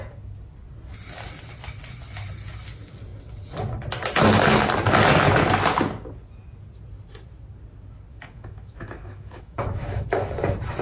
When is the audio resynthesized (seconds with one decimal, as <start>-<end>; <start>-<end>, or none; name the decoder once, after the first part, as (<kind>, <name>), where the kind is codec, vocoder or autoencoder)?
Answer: 8.1-10.3 (autoencoder, DAC-VAE)